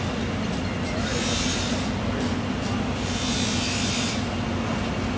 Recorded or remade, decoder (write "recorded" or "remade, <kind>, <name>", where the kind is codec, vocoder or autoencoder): recorded